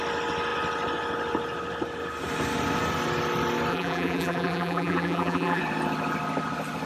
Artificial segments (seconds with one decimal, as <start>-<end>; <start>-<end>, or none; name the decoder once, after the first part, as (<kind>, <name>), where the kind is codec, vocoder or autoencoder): 3.7-5.6 (vocoder, BigVGAN v2)

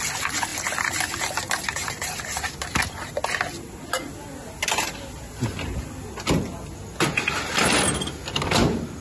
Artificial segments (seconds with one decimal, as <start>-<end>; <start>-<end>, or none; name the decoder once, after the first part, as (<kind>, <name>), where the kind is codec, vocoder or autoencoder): none

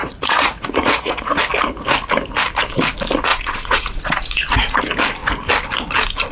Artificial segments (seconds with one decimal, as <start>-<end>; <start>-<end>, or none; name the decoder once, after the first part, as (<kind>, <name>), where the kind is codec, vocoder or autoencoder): 0.0-1.4 (vocoder, Vocos); 3.3-4.8

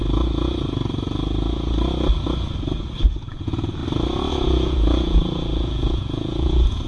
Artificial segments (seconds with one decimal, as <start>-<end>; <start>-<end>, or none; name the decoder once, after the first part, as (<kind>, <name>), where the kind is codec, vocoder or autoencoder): 3.3-3.8 (vocoder, Vocos); 4.3-6.9

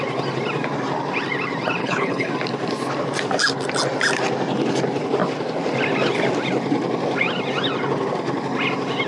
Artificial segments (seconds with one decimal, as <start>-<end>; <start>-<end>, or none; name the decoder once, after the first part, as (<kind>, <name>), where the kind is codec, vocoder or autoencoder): 1.8-2.3 (codec, HILCodec)